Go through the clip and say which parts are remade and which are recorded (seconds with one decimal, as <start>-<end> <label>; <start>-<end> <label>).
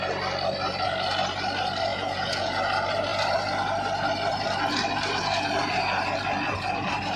0.0-1.9 recorded; 1.9-2.6 remade; 2.6-7.2 recorded